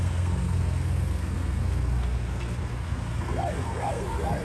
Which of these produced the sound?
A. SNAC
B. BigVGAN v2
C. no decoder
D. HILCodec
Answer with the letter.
A